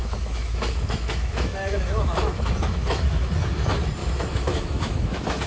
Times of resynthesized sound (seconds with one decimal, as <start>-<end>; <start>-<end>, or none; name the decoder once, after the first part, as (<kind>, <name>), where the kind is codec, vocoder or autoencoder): 0.0-3.3 (autoencoder, DAC-VAE); 4.0-5.5